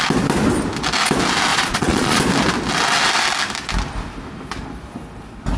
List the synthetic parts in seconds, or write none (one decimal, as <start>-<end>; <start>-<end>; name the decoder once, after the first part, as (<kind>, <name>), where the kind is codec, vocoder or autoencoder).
1.5-2.2 (vocoder, Vocos)